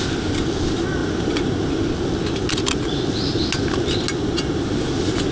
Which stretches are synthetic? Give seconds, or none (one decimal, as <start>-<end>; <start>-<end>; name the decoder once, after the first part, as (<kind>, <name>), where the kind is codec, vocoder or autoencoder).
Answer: none